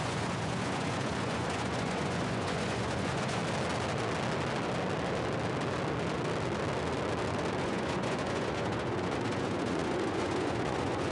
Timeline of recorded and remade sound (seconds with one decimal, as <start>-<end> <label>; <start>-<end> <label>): 0.0-3.4 remade; 3.4-7.6 recorded; 7.6-11.1 remade